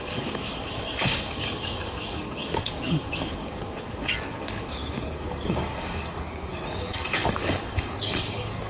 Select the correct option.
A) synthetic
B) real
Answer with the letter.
A